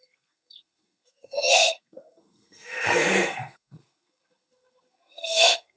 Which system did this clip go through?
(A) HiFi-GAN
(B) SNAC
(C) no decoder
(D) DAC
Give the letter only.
B